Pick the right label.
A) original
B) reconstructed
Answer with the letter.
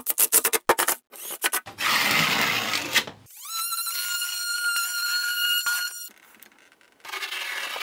A